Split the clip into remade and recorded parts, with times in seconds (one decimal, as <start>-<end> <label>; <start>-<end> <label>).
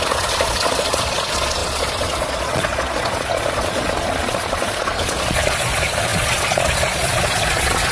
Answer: 0.0-7.9 remade